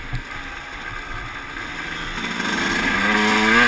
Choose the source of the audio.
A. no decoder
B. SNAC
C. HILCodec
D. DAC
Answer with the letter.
A